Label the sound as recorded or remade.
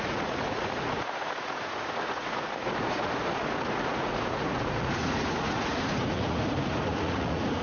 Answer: remade